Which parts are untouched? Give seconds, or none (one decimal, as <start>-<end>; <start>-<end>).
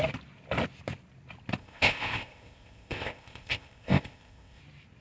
0.0-1.6; 4.6-5.0